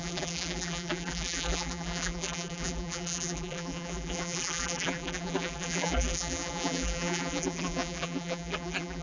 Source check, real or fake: fake